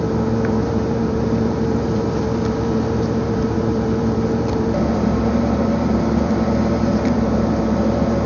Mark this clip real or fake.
fake